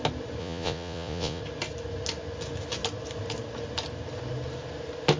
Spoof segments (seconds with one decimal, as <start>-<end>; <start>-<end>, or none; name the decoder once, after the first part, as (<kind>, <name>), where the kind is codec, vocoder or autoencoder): 0.4-1.4 (vocoder, Vocos)